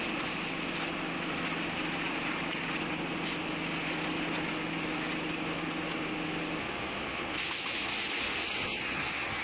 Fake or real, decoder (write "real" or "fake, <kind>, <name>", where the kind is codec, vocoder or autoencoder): real